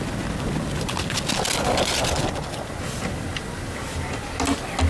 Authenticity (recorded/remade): recorded